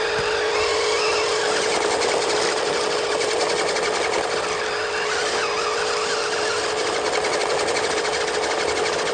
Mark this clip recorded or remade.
recorded